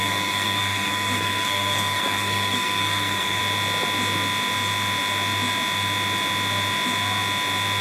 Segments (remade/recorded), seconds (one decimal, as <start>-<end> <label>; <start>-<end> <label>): 0.0-3.4 remade; 3.4-7.8 recorded